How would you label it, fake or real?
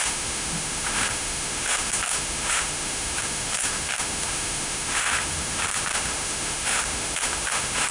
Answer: fake